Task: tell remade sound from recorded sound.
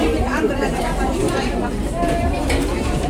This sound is remade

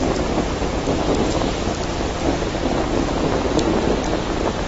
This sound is recorded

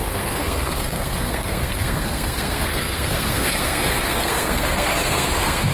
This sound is remade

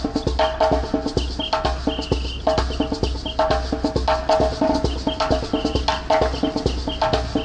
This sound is recorded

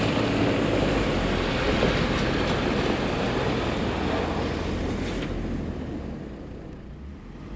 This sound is recorded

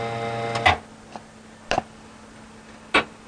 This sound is recorded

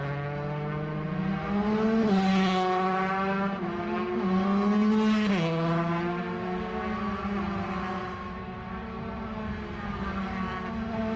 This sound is recorded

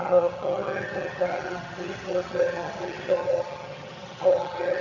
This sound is remade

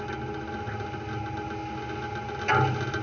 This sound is recorded